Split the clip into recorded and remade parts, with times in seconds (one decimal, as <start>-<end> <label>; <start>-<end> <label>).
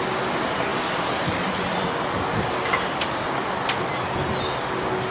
0.0-0.7 recorded; 0.7-3.8 remade; 3.8-5.1 recorded